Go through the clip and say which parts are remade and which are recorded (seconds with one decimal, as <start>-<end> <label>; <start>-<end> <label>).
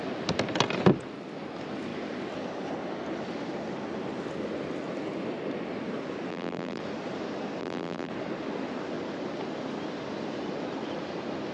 0.0-6.3 recorded; 6.3-6.8 remade; 6.8-7.6 recorded; 7.6-8.1 remade; 8.1-11.5 recorded